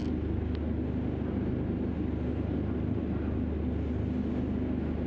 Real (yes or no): yes